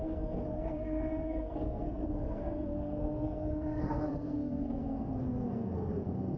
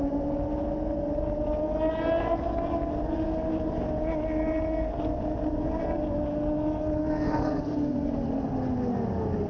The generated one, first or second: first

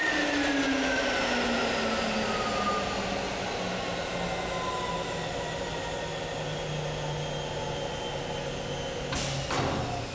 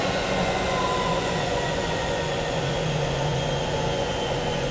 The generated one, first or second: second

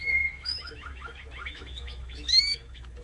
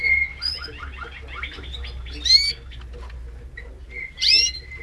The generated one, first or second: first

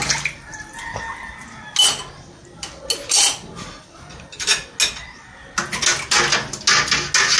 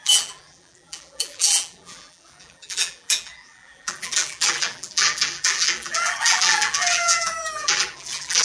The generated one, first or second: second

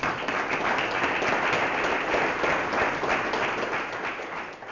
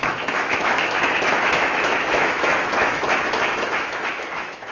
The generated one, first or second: second